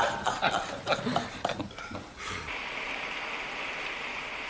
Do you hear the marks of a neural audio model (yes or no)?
no